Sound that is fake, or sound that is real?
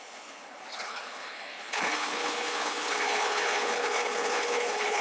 fake